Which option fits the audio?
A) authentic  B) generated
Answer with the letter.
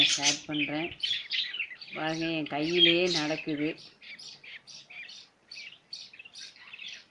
A